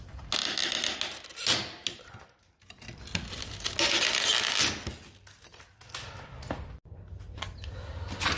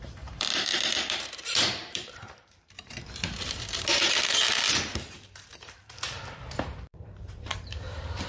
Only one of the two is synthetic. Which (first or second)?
second